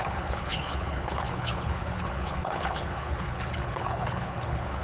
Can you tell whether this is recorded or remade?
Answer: remade